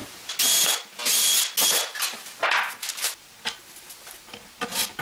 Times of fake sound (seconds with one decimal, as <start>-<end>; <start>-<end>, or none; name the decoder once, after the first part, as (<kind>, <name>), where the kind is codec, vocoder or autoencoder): none

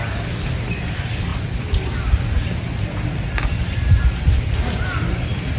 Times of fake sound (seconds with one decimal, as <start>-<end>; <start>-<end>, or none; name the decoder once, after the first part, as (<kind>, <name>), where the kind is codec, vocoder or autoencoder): none

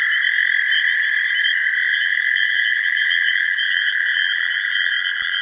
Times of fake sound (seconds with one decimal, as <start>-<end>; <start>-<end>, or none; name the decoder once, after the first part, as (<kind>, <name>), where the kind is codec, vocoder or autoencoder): 1.9-5.4 (vocoder, BigVGAN v2)